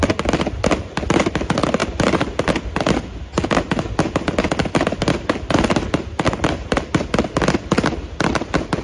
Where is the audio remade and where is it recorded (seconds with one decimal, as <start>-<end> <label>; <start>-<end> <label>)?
0.0-8.8 recorded